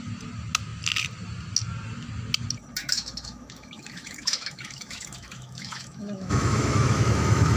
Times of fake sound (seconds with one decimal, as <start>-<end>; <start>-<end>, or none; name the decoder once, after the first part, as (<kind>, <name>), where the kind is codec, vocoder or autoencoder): 2.8-7.6 (autoencoder, DAC-VAE)